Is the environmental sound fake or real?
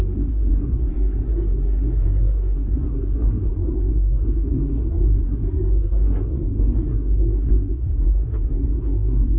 fake